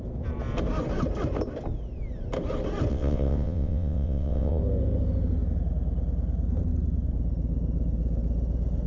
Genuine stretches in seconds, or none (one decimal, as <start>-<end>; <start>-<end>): 0.0-2.9; 4.6-8.9